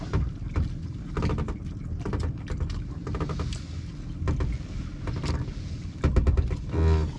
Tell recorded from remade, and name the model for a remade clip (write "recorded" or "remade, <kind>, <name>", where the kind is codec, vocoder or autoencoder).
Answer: recorded